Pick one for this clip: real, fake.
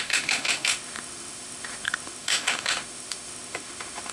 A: fake